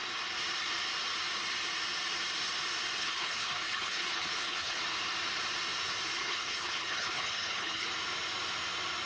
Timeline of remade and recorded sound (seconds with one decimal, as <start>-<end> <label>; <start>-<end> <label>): 0.0-3.0 recorded; 3.0-4.8 remade; 4.8-6.2 recorded; 6.2-7.9 remade; 7.9-9.1 recorded